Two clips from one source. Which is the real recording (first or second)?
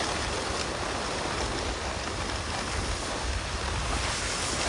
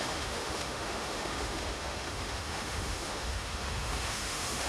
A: first